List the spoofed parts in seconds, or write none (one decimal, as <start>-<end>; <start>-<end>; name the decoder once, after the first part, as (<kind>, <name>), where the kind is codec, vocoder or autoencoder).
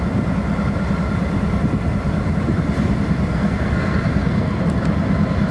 3.3-4.6 (codec, SNAC)